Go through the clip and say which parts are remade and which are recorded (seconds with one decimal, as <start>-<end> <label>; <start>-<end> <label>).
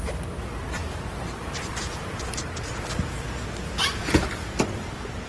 0.0-5.3 recorded